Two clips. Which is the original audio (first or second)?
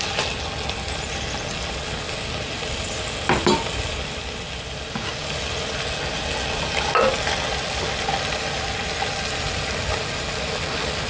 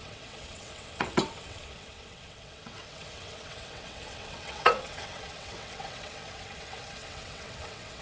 first